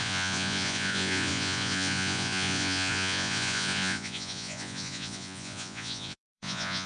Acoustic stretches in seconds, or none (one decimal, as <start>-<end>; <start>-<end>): none